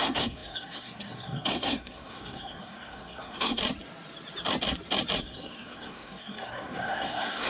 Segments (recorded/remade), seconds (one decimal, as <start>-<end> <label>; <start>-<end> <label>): 0.0-3.6 remade; 3.6-5.2 recorded; 5.2-7.5 remade